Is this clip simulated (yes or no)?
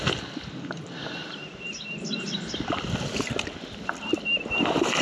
no